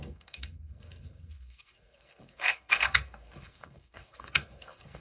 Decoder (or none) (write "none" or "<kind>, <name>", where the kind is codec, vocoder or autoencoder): codec, SNAC